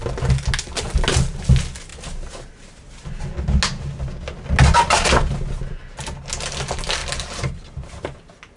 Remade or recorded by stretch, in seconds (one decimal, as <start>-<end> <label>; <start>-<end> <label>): 0.0-8.6 recorded